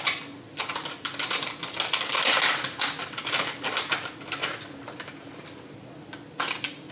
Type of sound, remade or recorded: recorded